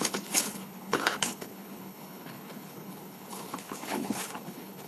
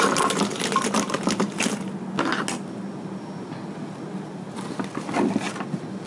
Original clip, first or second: second